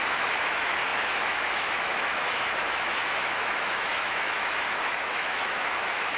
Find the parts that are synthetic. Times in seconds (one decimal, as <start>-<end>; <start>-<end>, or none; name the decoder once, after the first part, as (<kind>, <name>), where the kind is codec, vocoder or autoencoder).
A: 0.0-6.2 (autoencoder, DAC-VAE)

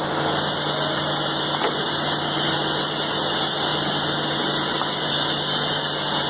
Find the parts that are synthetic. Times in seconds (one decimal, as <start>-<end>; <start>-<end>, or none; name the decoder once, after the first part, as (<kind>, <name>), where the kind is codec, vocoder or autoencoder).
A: none

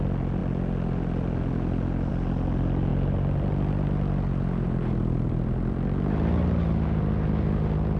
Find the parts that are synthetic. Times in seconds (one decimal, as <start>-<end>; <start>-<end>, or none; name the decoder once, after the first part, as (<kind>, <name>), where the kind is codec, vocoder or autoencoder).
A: none